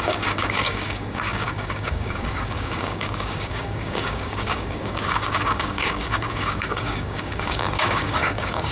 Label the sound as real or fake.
fake